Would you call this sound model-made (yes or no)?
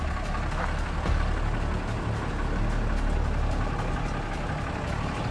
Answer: no